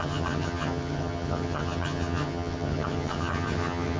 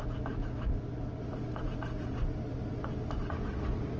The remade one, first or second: first